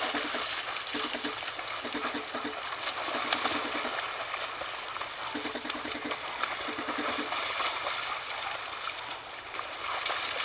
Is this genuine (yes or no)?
yes